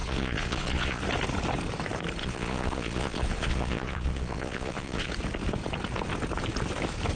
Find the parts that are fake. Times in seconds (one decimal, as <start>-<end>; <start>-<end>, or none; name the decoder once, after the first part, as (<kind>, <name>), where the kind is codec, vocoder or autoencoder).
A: 0.0-1.0 (vocoder, Vocos); 2.2-5.1